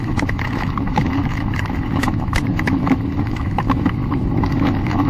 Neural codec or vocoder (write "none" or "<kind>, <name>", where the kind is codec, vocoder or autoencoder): autoencoder, DAC-VAE